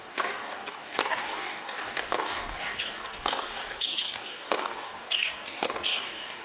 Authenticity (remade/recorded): remade